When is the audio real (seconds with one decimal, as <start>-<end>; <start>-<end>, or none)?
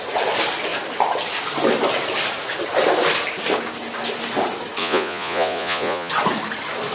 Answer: 0.0-4.8; 6.1-6.9